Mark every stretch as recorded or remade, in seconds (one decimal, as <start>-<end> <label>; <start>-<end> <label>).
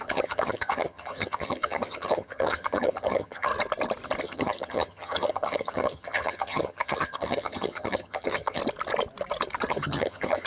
0.0-3.5 remade; 3.5-4.2 recorded; 4.2-8.6 remade; 8.6-9.7 recorded; 9.7-10.5 remade